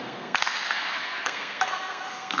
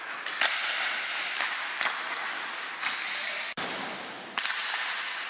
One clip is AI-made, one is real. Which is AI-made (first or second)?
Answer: first